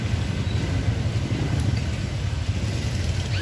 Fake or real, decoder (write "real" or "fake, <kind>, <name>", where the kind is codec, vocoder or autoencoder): real